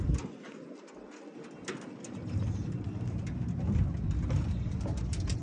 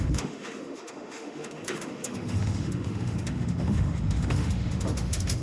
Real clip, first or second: first